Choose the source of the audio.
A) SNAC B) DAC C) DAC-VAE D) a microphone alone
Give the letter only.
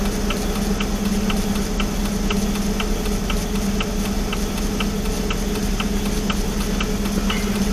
D